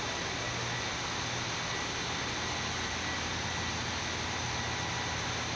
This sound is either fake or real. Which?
real